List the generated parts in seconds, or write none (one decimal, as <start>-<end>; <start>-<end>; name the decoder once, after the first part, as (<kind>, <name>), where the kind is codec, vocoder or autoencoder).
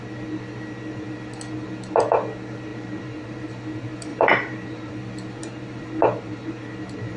2.7-3.5 (vocoder, BigVGAN v2); 4.1-4.9; 5.4-7.2